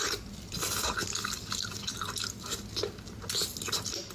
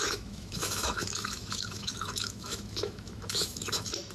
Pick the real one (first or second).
first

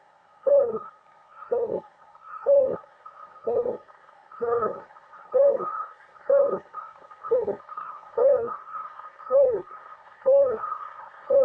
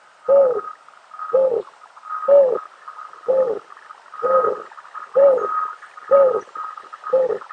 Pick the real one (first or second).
second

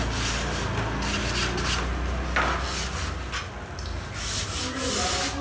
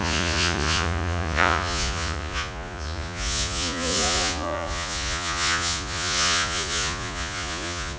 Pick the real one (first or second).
first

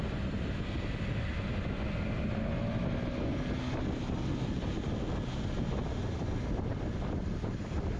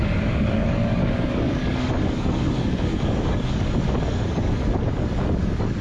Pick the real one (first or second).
first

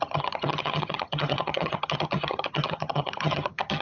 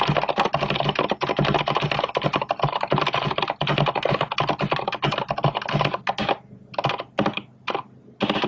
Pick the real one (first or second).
second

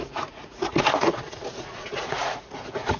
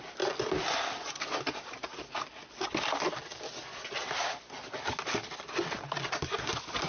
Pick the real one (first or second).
second